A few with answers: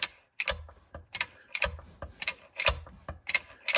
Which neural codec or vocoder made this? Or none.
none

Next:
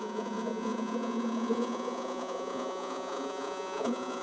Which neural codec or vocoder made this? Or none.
vocoder, Vocos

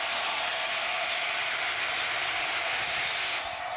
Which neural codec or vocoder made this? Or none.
none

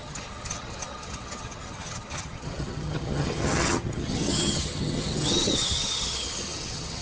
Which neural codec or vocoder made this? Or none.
vocoder, HiFi-GAN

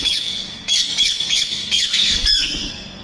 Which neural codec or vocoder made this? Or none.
codec, SNAC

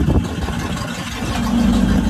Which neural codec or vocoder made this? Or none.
none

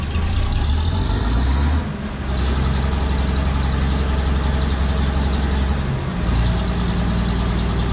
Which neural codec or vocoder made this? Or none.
none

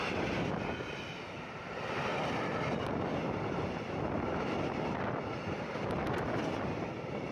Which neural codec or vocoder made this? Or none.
none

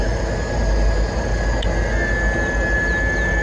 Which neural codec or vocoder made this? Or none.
none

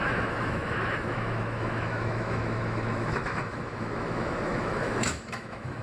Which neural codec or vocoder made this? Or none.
autoencoder, DAC-VAE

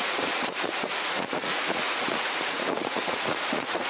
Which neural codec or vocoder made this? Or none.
vocoder, Vocos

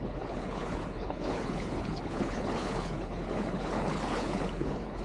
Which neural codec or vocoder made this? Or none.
codec, HILCodec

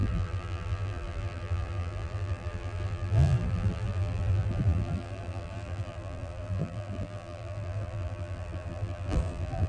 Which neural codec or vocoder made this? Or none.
vocoder, BigVGAN v2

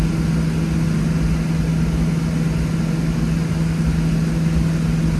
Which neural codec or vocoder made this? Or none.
none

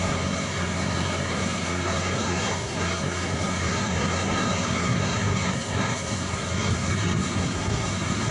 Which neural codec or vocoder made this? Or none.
codec, SNAC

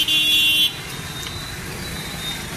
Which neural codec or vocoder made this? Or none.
none